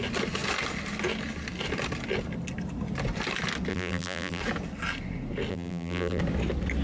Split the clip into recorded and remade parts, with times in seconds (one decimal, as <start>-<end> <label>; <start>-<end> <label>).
0.0-3.7 recorded; 3.7-4.4 remade; 4.4-5.5 recorded; 5.5-6.2 remade; 6.2-6.8 recorded